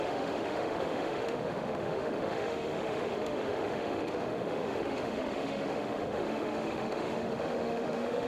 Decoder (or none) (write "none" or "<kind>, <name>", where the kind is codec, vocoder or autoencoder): autoencoder, DAC-VAE